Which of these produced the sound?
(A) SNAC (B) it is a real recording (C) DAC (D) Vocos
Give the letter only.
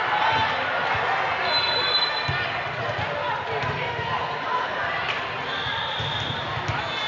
B